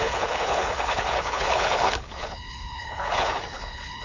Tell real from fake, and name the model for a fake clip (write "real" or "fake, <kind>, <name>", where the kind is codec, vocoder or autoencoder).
fake, codec, HILCodec